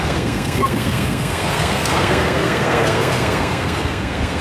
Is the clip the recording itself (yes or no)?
no